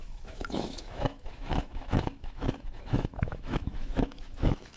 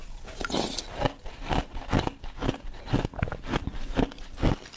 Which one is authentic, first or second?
second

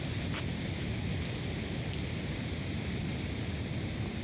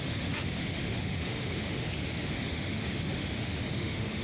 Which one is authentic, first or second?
first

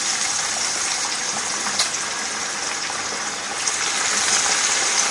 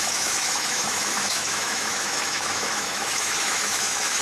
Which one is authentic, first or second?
first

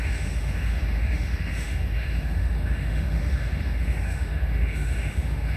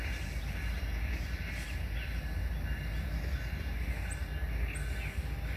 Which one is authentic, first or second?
second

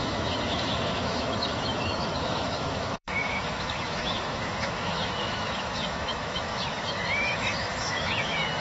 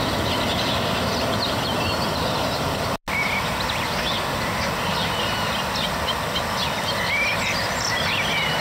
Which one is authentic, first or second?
second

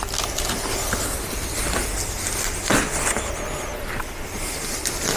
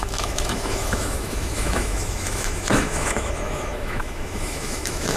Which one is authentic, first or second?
first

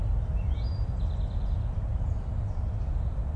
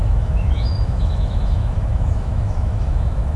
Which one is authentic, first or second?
first